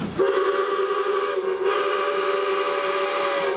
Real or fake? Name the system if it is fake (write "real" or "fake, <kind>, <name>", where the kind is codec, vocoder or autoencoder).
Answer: real